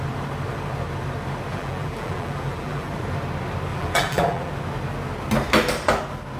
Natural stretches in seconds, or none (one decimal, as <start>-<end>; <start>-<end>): 0.0-1.5; 2.9-3.7; 4.5-6.4